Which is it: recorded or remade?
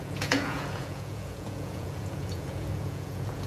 remade